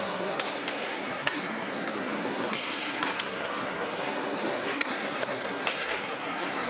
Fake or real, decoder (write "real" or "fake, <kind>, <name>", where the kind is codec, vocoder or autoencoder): fake, codec, SNAC